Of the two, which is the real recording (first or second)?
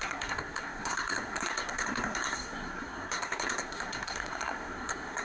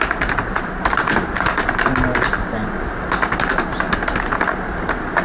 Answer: second